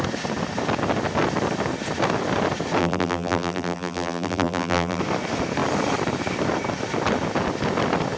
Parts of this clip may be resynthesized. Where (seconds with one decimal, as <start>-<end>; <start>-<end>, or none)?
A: 2.8-5.0